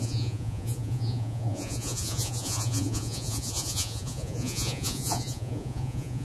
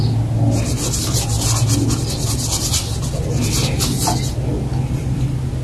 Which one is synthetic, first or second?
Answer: first